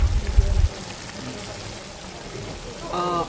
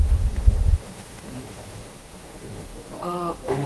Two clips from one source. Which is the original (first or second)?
first